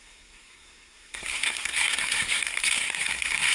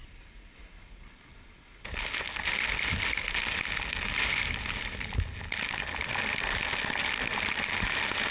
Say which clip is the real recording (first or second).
second